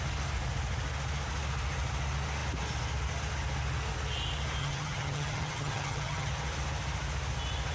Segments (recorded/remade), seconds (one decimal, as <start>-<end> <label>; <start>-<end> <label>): 0.0-4.6 recorded; 4.6-6.3 remade; 6.3-7.7 recorded